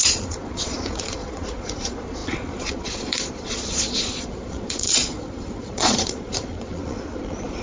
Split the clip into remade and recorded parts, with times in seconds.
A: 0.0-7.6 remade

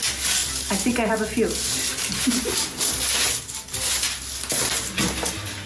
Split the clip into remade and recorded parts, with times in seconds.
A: 0.0-5.7 recorded

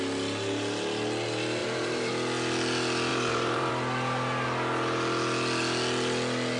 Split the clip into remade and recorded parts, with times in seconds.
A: 0.0-1.6 recorded; 1.6-2.1 remade; 2.1-3.1 recorded; 3.1-3.7 remade; 3.7-6.6 recorded

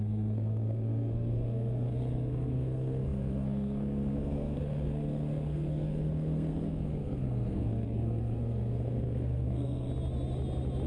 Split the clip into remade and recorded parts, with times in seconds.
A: 0.0-9.9 remade; 9.9-10.9 recorded

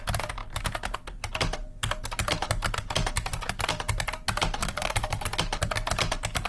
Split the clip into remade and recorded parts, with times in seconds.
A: 0.0-4.6 recorded; 4.6-5.2 remade; 5.2-6.5 recorded

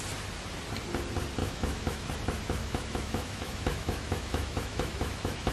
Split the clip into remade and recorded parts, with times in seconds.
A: 0.0-1.4 recorded; 1.4-2.1 remade; 2.1-2.6 recorded; 2.6-5.5 remade

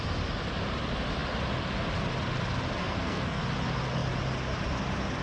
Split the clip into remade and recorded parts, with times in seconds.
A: 0.0-2.8 recorded; 2.8-3.4 remade; 3.4-5.2 recorded

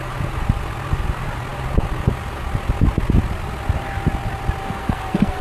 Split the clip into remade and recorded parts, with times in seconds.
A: 0.0-4.6 recorded; 4.6-5.4 remade